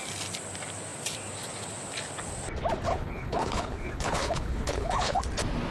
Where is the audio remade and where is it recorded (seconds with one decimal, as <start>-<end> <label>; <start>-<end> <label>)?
0.0-2.9 recorded; 2.9-5.2 remade; 5.2-5.7 recorded